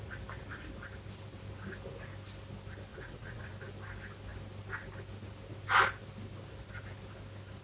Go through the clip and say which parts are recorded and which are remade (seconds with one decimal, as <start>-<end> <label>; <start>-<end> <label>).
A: 0.0-2.9 recorded; 2.9-3.5 remade; 3.5-7.6 recorded